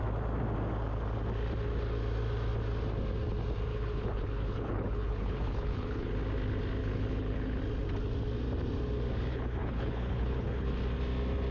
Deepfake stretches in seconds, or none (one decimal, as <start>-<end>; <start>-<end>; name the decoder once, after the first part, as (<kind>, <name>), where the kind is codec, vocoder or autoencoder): 3.7-6.1 (codec, HILCodec); 6.8-7.6; 9.3-10.7